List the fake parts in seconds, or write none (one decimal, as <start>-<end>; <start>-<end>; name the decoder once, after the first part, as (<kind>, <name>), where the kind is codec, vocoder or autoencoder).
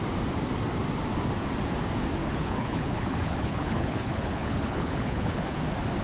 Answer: 2.2-5.6 (codec, HILCodec)